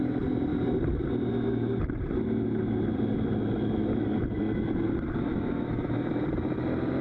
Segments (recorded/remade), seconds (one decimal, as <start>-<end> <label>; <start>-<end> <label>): 0.0-5.3 recorded; 5.3-5.9 remade; 5.9-7.0 recorded